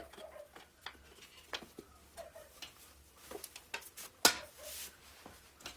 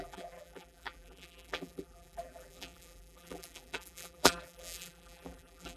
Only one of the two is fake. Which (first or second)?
second